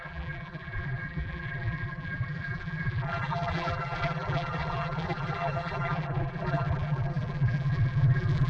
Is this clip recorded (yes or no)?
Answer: no